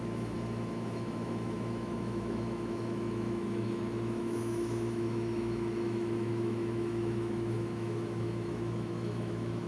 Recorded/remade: remade